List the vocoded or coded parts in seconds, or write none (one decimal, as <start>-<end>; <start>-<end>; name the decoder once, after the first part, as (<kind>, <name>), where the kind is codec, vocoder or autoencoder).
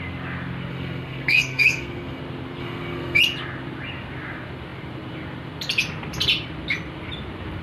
0.7-2.2 (codec, SNAC); 2.6-3.2